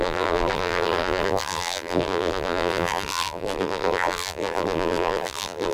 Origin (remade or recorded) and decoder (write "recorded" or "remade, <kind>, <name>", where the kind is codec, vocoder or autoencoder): remade, vocoder, BigVGAN v2